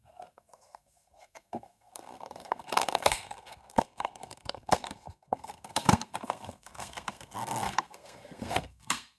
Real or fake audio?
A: fake